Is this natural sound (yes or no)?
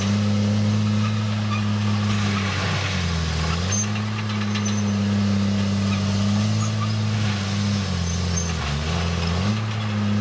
yes